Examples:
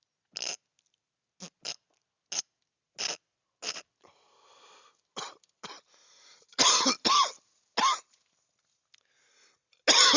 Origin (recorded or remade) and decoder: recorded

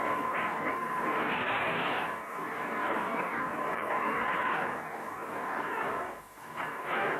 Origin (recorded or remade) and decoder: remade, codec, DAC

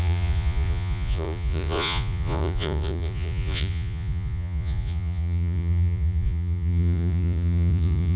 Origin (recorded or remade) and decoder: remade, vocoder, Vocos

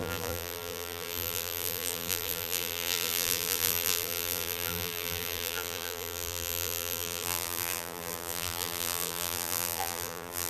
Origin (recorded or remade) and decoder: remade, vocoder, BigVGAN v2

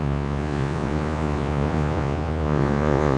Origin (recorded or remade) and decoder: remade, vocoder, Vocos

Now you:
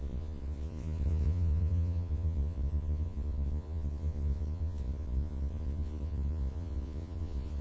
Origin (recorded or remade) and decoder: remade, vocoder, Vocos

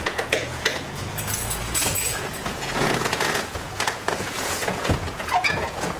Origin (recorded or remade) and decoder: remade, vocoder, Vocos